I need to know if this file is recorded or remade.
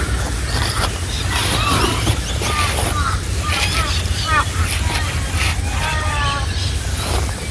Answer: recorded